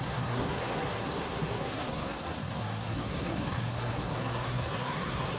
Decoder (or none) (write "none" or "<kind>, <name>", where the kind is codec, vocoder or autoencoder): codec, SNAC